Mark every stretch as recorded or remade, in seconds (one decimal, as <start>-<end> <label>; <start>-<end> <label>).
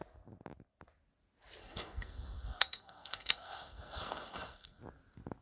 0.0-1.6 recorded; 1.6-4.8 remade; 4.8-5.4 recorded